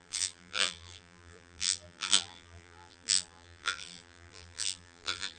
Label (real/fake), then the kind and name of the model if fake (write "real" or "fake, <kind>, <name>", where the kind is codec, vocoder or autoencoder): fake, vocoder, BigVGAN v2